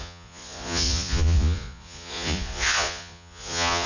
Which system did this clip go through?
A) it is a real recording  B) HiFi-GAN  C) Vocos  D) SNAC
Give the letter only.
C